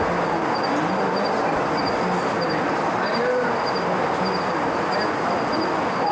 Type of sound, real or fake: real